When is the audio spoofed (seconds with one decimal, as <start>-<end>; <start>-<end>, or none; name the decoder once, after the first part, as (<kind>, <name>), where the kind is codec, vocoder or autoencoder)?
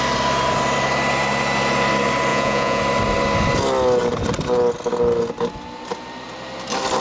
2.3-2.8 (vocoder, Vocos)